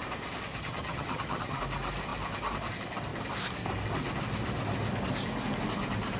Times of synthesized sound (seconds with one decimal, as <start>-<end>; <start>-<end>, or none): 0.5-1.6